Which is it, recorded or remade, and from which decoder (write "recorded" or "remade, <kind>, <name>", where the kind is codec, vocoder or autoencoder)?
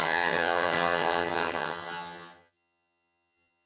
remade, vocoder, HiFi-GAN